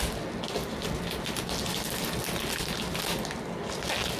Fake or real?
real